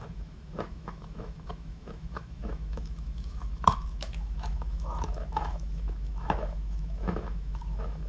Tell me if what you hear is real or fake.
fake